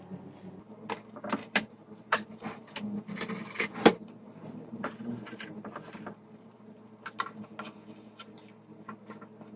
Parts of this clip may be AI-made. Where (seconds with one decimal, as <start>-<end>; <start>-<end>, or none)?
1.4-6.6